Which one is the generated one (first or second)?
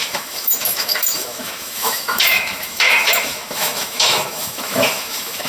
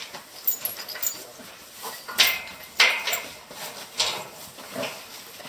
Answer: first